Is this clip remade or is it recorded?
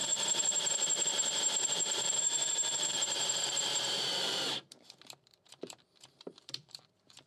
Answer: remade